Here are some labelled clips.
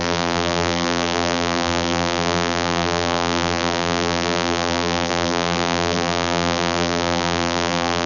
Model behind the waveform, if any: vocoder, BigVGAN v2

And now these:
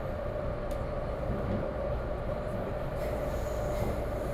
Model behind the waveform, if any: none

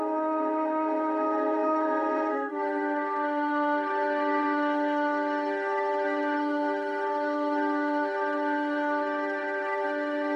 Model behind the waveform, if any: autoencoder, DAC-VAE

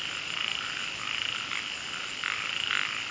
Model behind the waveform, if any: none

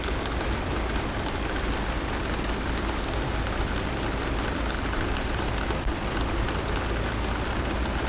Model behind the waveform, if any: none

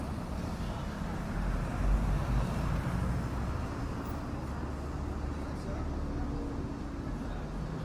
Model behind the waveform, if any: none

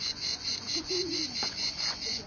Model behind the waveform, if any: vocoder, Vocos